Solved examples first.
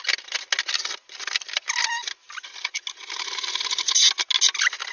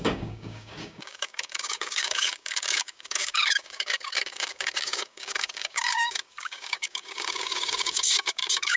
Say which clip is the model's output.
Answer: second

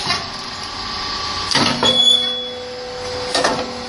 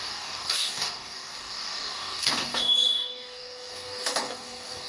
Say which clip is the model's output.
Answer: second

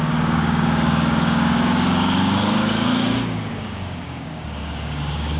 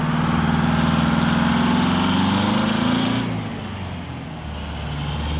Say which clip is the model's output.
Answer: first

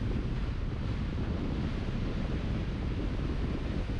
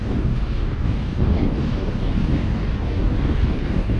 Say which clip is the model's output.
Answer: second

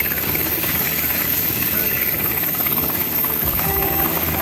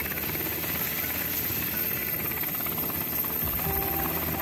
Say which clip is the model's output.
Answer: first